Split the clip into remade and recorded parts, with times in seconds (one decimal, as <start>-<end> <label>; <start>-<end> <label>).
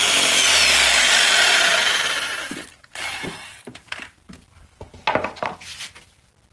0.0-1.8 recorded; 1.8-4.4 remade; 4.4-6.5 recorded